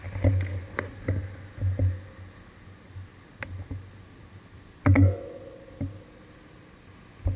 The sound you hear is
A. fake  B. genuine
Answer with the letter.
B